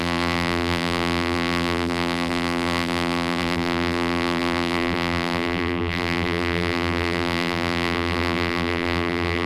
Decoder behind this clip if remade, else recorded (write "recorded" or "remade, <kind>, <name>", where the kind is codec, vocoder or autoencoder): remade, vocoder, BigVGAN v2